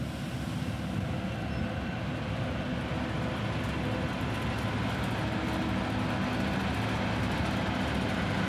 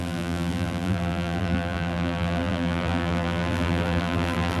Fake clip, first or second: second